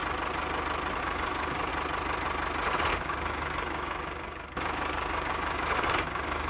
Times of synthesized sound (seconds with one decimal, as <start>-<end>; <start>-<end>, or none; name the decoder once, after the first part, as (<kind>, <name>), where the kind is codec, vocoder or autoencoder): 1.0-1.7 (codec, DAC); 2.9-6.5